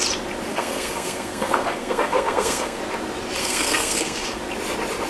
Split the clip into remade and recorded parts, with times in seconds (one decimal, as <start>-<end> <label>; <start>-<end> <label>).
0.0-0.5 recorded; 0.5-2.8 remade; 2.8-3.4 recorded; 3.4-4.4 remade; 4.4-5.1 recorded